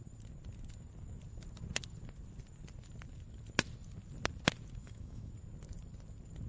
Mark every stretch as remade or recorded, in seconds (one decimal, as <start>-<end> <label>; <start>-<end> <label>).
0.0-4.8 recorded; 4.8-5.3 remade; 5.3-6.5 recorded